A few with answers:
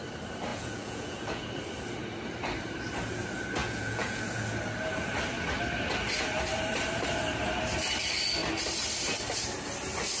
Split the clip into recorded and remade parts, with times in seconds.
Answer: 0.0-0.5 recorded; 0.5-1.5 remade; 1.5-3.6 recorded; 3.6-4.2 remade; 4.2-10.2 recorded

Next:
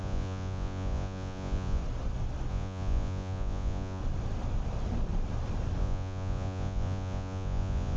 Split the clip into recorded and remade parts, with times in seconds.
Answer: 0.0-1.8 remade; 1.8-2.5 recorded; 2.5-4.0 remade; 4.0-5.8 recorded; 5.8-8.0 remade

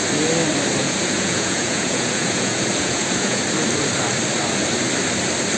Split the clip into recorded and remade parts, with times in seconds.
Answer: 0.0-0.8 recorded; 0.8-3.4 remade; 3.4-5.6 recorded

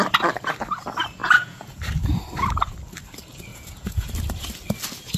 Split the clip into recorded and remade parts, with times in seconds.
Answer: 0.0-1.2 recorded; 1.2-1.8 remade; 1.8-3.5 recorded; 3.5-4.1 remade; 4.1-5.2 recorded

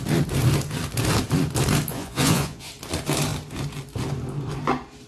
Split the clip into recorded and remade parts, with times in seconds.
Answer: 0.0-1.9 recorded; 1.9-2.7 remade; 2.7-5.1 recorded